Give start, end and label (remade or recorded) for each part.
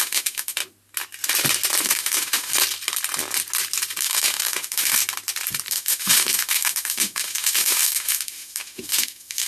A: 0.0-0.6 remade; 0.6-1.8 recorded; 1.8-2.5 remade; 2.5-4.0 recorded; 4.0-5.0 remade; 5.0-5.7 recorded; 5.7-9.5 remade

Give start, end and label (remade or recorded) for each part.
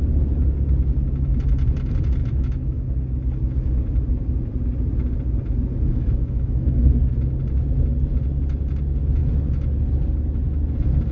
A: 0.0-2.2 recorded; 2.2-2.9 remade; 2.9-5.9 recorded; 5.9-7.0 remade; 7.0-11.1 recorded